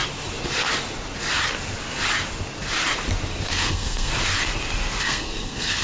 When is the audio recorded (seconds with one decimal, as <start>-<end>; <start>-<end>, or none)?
0.0-3.5; 4.1-5.0